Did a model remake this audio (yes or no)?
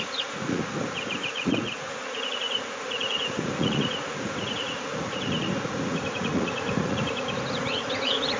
yes